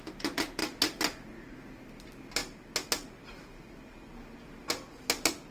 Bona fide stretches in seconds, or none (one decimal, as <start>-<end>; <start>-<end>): 0.0-5.5